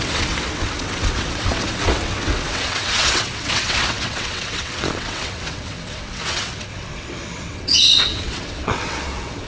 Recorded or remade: remade